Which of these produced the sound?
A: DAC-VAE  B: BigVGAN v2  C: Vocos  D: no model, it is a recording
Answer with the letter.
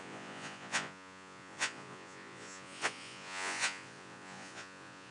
C